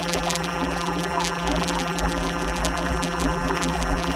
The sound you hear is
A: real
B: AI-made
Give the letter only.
B